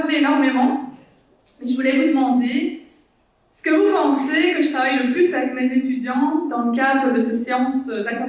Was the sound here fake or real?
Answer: real